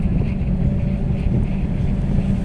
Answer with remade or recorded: recorded